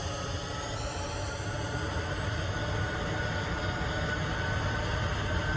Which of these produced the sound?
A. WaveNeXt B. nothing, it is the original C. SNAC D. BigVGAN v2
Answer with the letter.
B